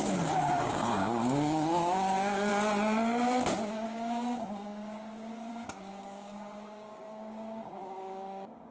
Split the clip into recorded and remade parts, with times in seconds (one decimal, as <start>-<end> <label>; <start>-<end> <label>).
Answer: 0.0-2.5 remade; 2.5-3.7 recorded; 3.7-8.7 remade